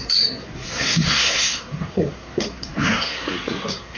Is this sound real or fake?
fake